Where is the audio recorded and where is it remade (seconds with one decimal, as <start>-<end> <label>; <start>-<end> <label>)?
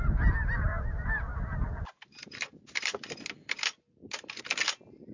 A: 0.0-5.1 recorded